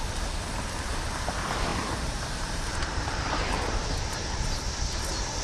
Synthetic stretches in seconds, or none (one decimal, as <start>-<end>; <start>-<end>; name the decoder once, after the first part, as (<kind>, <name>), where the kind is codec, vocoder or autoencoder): 1.7-3.2 (vocoder, BigVGAN v2)